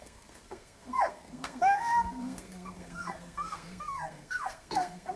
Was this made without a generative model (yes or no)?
no